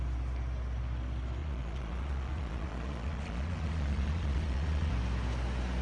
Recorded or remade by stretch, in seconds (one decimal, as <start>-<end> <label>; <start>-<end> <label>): 0.0-1.4 recorded; 1.4-4.9 remade; 4.9-5.8 recorded

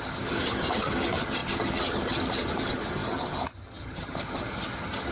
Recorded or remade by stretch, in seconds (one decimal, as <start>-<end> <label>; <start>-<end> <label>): 0.0-5.1 remade

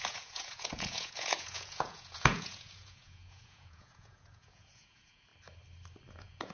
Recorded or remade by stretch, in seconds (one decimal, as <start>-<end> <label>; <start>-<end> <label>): 0.0-5.3 remade; 5.3-6.1 recorded; 6.1-6.5 remade

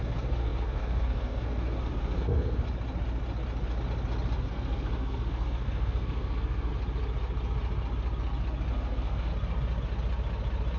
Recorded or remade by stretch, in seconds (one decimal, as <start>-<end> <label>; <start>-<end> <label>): 0.0-2.6 remade; 2.6-4.4 recorded; 4.4-6.7 remade; 6.7-8.7 recorded; 8.7-9.3 remade; 9.3-10.8 recorded

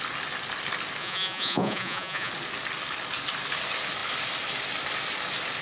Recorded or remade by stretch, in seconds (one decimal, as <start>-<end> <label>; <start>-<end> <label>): 0.0-1.0 recorded; 1.0-2.3 remade; 2.3-5.6 recorded

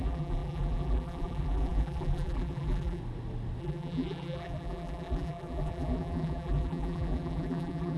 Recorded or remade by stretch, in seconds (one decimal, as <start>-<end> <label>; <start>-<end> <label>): 0.0-3.0 remade; 3.0-3.6 recorded; 3.6-8.0 remade

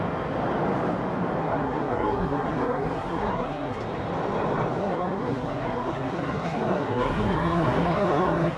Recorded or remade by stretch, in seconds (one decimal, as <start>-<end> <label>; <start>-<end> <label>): 0.0-1.4 recorded; 1.4-3.8 remade; 3.8-4.8 recorded; 4.8-8.6 remade

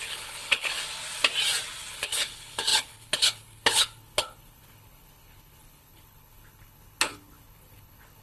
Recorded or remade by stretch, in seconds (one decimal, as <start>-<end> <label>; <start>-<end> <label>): 0.0-0.8 remade; 0.8-1.9 recorded; 1.9-8.2 remade